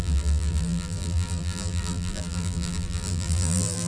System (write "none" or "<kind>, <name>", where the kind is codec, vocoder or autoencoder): vocoder, BigVGAN v2